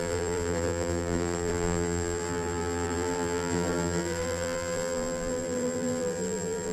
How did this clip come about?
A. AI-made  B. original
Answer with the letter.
A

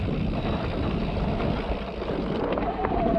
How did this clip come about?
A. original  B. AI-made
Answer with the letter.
A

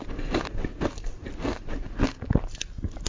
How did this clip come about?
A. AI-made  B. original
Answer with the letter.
B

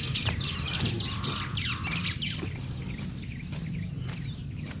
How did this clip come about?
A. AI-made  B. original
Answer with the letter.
A